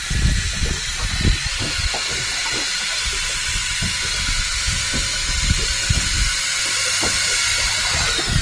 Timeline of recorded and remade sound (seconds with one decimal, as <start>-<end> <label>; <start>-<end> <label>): 0.0-2.4 recorded; 2.4-2.9 remade; 2.9-8.4 recorded